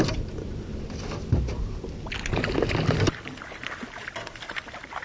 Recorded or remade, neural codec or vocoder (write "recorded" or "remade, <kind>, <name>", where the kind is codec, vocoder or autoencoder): recorded